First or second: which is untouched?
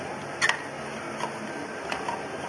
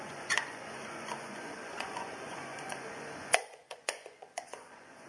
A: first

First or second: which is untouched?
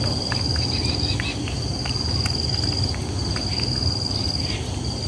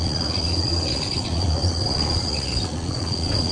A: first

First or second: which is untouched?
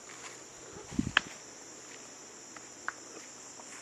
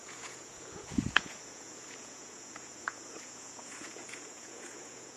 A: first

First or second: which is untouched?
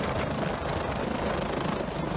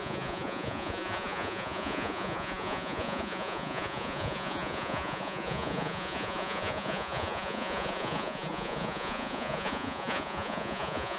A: first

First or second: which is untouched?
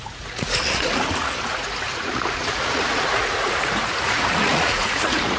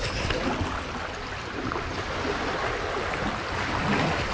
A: second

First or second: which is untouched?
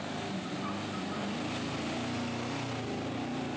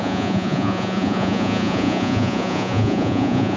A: first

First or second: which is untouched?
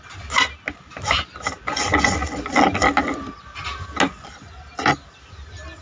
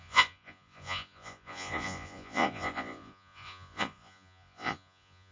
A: first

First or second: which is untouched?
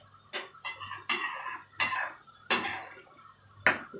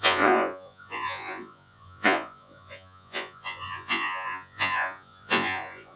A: first